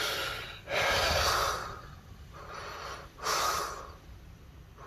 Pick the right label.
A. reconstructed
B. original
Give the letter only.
B